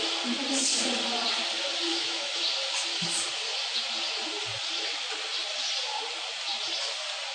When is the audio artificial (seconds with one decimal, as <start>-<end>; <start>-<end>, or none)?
1.9-2.4